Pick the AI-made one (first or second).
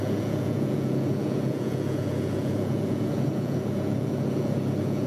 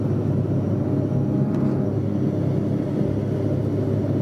first